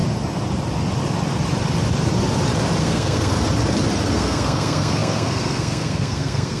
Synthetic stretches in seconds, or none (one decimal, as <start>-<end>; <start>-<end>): 2.8-3.3; 4.1-6.6